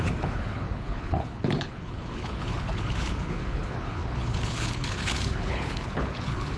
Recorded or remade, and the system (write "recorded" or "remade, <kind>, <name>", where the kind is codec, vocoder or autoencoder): remade, codec, HILCodec